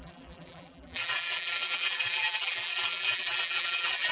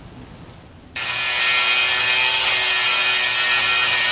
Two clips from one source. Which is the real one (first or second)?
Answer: second